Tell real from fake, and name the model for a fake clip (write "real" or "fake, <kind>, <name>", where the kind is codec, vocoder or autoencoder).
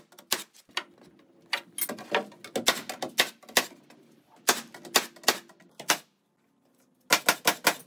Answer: real